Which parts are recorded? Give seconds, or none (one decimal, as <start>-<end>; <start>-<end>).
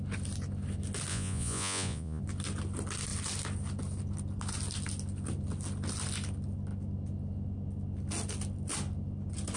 0.0-1.1; 2.2-9.6